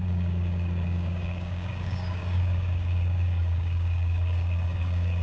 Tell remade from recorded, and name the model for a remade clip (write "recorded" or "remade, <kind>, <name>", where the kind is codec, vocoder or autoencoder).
remade, codec, DAC